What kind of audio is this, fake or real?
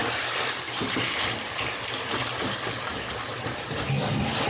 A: real